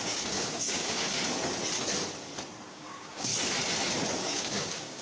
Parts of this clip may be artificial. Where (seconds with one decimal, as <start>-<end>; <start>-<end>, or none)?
0.0-1.1; 2.7-3.3; 4.2-5.0